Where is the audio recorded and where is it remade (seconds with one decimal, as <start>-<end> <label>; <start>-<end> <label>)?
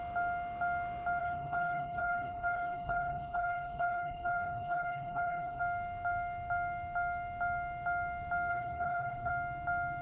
0.0-1.2 recorded; 1.2-5.6 remade; 5.6-8.5 recorded; 8.5-9.3 remade; 9.3-10.0 recorded